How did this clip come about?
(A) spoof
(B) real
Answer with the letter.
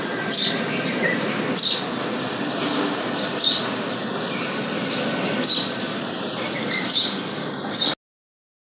B